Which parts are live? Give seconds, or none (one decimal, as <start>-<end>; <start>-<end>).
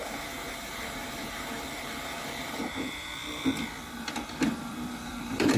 3.1-4.1